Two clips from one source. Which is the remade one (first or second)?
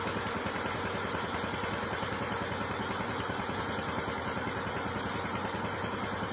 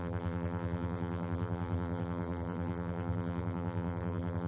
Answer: second